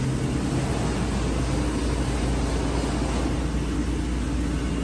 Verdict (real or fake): real